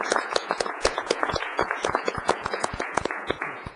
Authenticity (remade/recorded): remade